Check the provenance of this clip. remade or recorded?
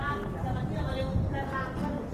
recorded